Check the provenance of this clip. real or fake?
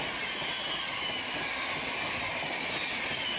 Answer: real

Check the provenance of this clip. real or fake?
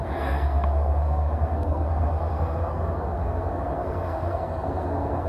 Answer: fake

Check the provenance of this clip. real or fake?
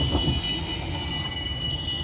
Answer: real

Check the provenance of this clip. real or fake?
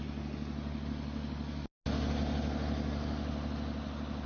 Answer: real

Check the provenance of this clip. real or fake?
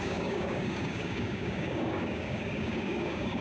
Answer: fake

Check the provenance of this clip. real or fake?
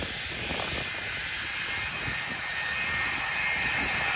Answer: real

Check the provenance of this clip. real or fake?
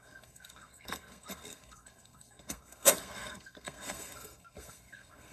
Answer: fake